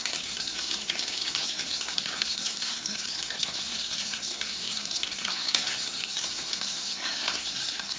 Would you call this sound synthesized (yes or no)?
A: yes